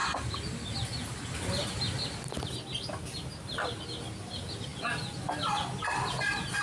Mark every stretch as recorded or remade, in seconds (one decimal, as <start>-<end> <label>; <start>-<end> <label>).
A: 0.0-6.6 recorded